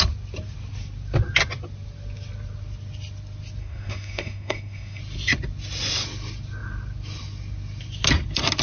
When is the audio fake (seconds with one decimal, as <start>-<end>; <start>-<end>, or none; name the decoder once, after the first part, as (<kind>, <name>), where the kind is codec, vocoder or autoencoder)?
3.6-5.0 (codec, SNAC)